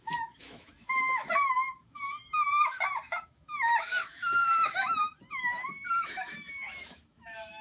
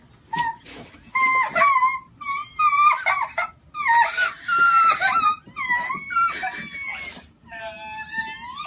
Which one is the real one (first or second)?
second